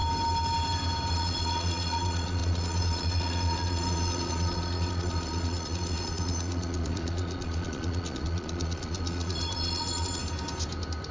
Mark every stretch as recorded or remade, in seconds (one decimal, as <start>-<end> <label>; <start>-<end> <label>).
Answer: 0.0-1.1 recorded; 1.1-10.2 remade; 10.2-11.1 recorded